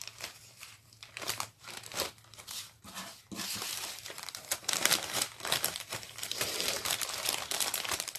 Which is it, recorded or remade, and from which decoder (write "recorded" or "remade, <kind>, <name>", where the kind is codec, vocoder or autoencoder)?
remade, vocoder, BigVGAN v2